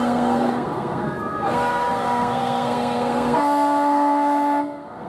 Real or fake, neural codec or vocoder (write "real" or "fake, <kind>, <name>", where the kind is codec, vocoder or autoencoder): fake, codec, SNAC